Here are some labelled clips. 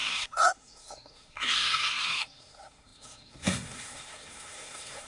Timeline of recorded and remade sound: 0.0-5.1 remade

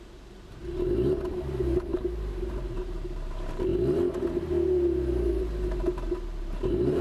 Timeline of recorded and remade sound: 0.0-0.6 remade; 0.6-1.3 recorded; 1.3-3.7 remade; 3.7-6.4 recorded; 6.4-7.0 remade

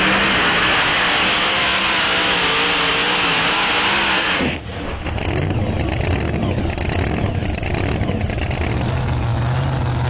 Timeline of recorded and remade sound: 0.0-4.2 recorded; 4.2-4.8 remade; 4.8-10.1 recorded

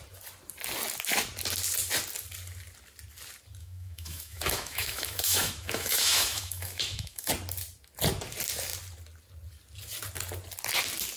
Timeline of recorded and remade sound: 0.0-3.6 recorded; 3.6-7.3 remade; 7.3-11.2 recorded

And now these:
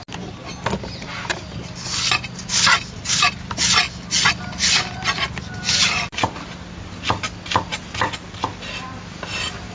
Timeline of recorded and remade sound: 0.0-9.7 recorded

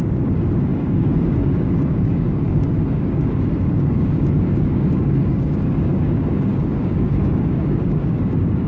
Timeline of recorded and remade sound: 0.0-8.7 remade